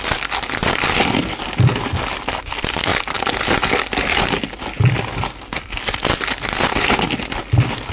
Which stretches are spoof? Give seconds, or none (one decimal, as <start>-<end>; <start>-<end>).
none